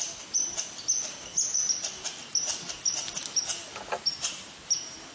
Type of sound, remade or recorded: recorded